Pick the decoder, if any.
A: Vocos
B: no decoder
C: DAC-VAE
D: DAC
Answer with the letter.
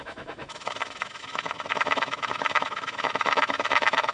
C